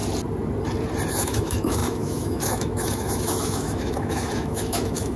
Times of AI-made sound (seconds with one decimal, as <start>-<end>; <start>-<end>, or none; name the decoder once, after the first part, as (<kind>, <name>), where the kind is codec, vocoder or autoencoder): 1.1-5.2 (autoencoder, DAC-VAE)